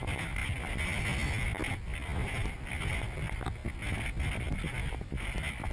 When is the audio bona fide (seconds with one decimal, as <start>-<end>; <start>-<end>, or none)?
0.0-5.7